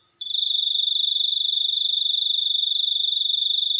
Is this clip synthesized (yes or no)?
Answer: no